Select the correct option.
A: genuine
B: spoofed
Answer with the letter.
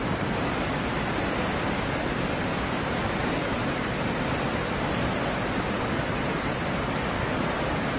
B